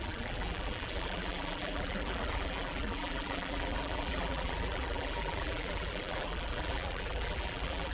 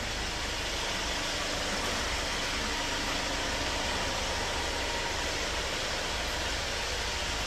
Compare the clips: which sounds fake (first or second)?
first